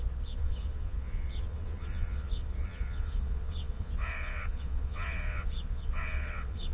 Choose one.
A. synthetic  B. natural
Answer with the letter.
A